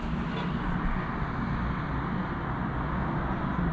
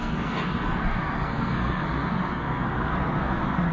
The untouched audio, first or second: first